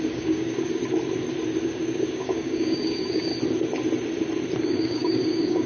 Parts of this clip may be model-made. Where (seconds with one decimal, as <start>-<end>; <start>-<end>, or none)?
0.0-0.8; 1.6-3.3; 4.6-5.7